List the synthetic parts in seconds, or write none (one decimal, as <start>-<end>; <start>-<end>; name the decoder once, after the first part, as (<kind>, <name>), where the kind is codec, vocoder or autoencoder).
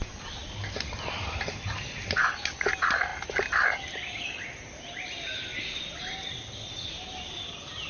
none